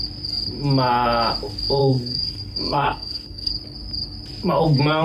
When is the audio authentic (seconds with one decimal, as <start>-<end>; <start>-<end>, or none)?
0.0-1.8; 3.5-5.0